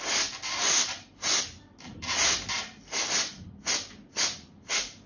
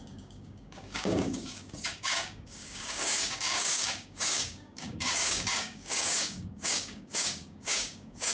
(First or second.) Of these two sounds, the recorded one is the first